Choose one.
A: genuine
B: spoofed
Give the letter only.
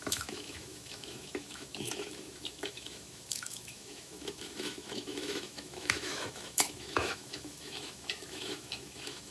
B